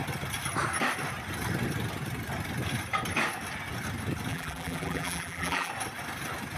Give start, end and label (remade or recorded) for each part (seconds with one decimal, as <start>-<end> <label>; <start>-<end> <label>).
0.0-4.3 recorded; 4.3-5.7 remade; 5.7-6.6 recorded